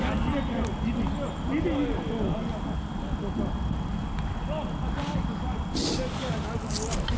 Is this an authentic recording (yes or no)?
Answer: yes